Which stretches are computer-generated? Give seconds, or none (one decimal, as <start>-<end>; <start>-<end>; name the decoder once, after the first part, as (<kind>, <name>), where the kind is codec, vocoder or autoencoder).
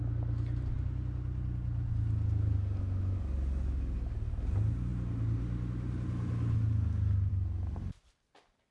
none